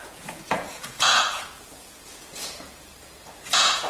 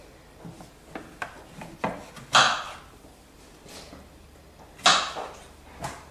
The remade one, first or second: first